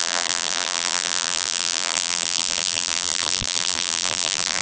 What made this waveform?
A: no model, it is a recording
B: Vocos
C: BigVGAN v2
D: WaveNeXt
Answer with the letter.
C